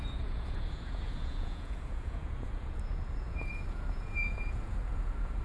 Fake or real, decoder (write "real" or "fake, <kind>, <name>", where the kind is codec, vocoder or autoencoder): fake, vocoder, Vocos